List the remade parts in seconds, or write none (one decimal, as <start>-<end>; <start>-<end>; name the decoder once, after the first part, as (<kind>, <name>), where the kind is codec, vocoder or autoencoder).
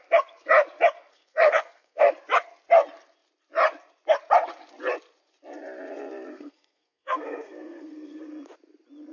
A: 1.1-2.1 (codec, SNAC); 6.3-8.3